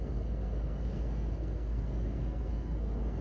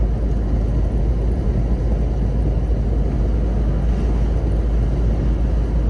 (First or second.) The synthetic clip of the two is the first